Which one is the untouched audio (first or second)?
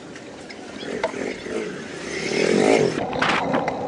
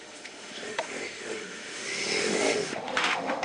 first